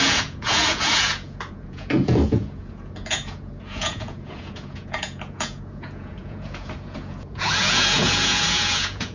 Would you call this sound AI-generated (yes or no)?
yes